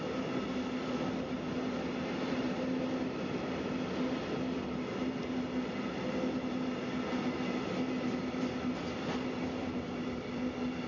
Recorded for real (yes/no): yes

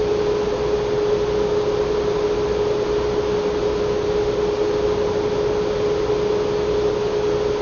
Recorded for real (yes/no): yes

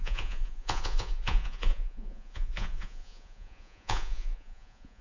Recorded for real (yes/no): no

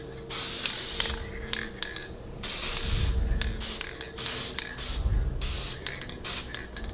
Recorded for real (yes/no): yes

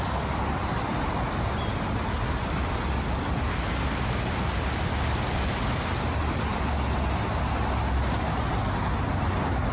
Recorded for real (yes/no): yes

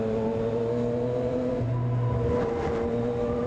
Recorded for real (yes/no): yes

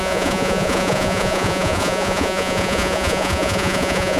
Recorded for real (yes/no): no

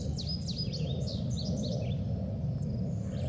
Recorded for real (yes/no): yes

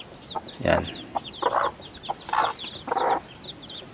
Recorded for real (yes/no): yes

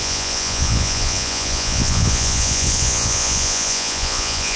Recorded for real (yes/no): no